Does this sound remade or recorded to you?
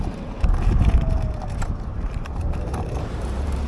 remade